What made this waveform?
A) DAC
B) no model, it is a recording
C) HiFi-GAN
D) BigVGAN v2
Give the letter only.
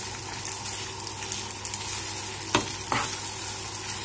B